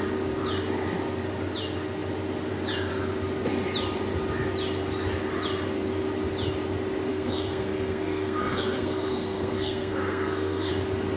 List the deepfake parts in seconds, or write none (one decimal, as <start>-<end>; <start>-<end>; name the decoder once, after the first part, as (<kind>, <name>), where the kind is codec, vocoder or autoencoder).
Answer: 7.1-10.7 (codec, SNAC)